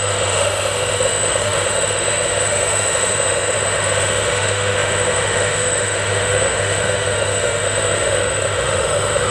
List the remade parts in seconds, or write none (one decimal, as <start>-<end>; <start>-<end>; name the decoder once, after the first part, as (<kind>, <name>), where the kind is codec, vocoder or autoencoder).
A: 0.0-9.3 (autoencoder, DAC-VAE)